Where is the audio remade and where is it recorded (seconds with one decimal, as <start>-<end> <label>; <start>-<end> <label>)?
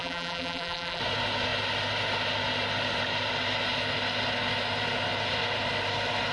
0.0-1.0 remade; 1.0-6.3 recorded